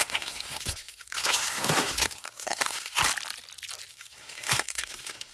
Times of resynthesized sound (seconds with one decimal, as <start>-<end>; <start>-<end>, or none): 0.0-3.0; 3.9-5.3